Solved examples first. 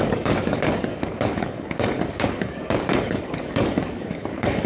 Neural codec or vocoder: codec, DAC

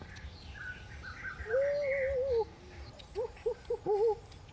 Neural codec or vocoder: none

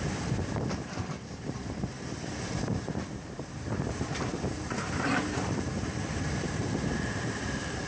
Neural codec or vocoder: vocoder, BigVGAN v2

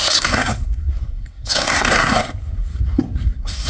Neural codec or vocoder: codec, SNAC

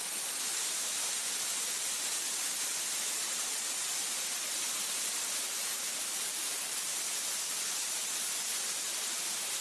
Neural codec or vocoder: none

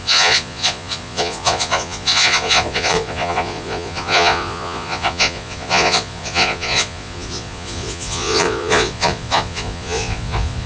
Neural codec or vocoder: vocoder, Vocos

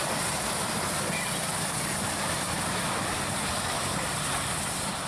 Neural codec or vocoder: vocoder, BigVGAN v2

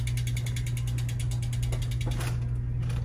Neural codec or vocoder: none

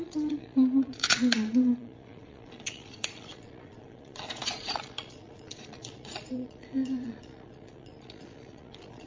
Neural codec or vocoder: vocoder, Vocos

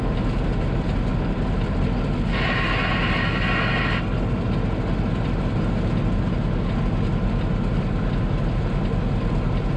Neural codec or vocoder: none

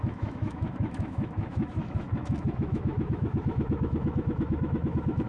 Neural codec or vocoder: autoencoder, DAC-VAE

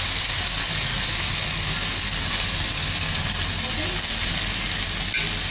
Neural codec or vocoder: none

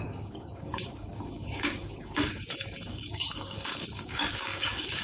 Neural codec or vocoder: codec, DAC